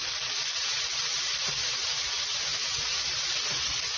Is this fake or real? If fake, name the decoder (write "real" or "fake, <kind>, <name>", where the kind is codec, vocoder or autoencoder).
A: real